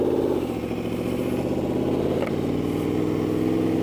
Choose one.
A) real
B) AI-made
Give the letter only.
A